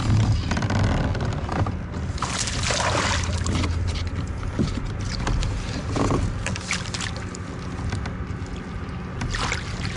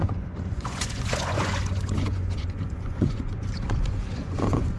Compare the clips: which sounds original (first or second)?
first